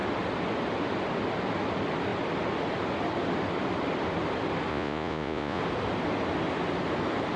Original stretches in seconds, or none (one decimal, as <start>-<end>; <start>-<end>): 0.0-4.7; 5.6-7.4